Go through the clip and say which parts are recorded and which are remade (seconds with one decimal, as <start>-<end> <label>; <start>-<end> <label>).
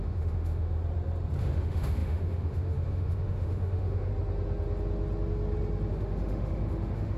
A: 0.0-0.8 remade; 0.8-1.4 recorded; 1.4-4.1 remade; 4.1-5.9 recorded; 5.9-7.2 remade